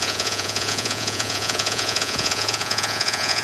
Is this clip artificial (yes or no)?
yes